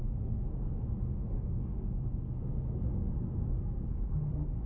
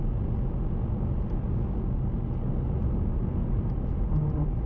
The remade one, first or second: first